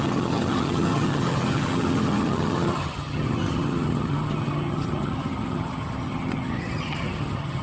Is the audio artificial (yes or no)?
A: yes